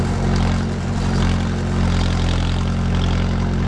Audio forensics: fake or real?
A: real